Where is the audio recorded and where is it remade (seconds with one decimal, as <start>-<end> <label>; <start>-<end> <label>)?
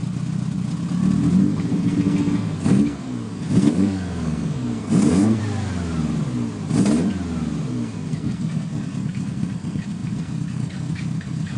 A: 0.0-1.4 recorded; 1.4-5.4 remade; 5.4-7.7 recorded; 7.7-11.6 remade